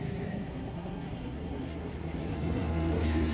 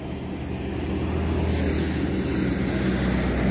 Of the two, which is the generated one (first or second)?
first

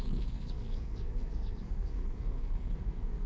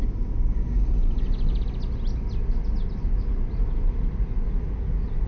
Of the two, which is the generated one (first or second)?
first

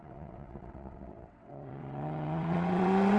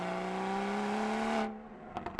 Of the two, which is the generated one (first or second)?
first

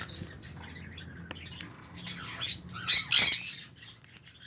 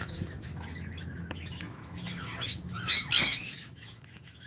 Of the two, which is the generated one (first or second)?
second